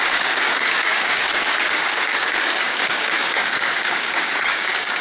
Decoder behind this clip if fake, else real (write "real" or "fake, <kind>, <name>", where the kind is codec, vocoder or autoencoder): fake, codec, DAC